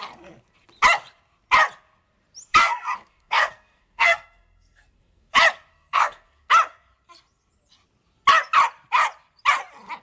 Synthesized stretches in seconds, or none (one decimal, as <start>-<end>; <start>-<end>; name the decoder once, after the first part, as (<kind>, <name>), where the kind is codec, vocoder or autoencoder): 2.6-5.3 (codec, SNAC); 5.7-6.5